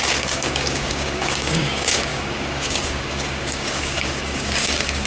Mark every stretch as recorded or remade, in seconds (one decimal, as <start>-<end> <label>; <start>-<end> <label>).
0.0-5.1 remade